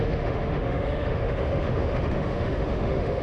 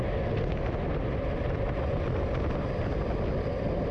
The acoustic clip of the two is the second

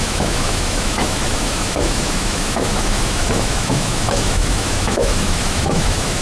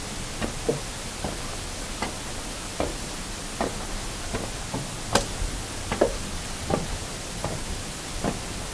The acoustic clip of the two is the second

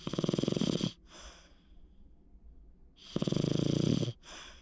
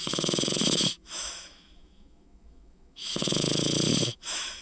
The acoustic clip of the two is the first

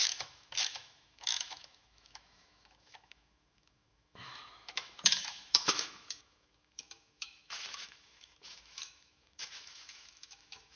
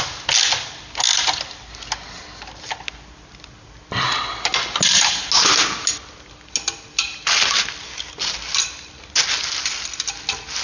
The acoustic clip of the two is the second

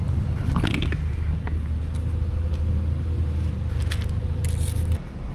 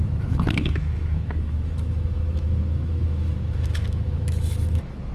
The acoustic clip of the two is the first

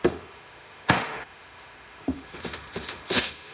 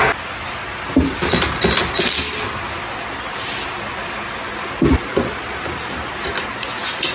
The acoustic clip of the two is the second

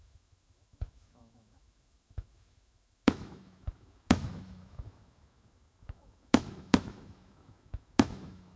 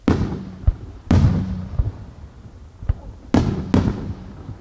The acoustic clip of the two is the second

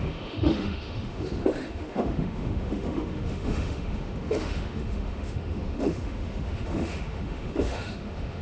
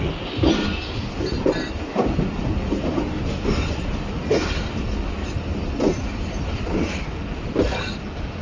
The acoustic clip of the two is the second